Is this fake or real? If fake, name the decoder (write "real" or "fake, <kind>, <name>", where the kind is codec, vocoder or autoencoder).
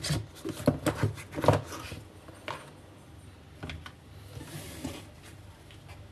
real